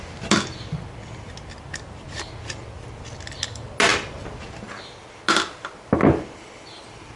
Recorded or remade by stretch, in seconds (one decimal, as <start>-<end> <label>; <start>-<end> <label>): 0.0-7.2 recorded